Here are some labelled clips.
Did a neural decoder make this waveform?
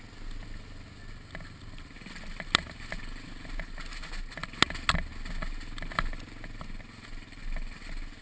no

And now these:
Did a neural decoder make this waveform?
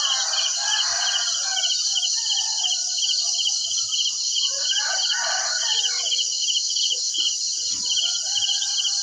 no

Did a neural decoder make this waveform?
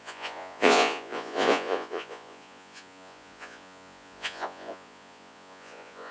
yes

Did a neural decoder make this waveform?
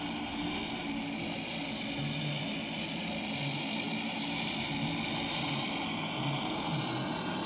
no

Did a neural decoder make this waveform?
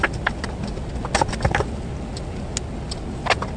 no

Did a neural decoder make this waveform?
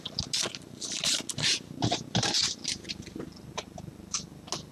no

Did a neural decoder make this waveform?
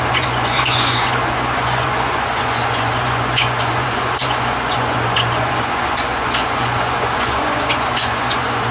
yes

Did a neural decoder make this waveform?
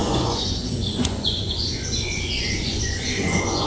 yes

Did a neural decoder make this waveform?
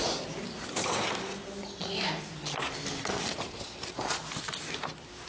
no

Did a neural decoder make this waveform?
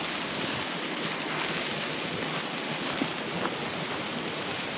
no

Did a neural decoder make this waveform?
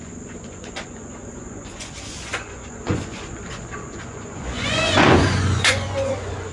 yes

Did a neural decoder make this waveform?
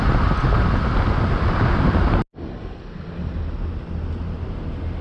no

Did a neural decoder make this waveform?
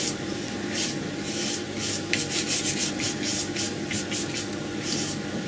no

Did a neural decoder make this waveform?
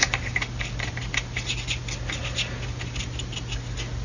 no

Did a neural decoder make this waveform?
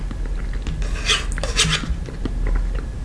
no